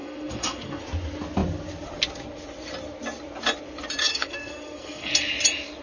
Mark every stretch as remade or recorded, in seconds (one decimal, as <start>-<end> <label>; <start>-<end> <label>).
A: 0.0-0.8 remade; 0.8-4.1 recorded; 4.1-5.1 remade; 5.1-5.8 recorded